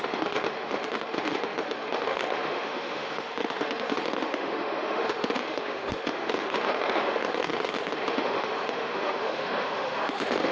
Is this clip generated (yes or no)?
yes